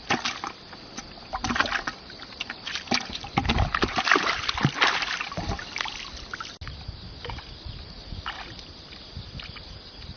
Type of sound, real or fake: real